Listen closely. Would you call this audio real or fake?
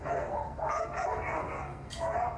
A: fake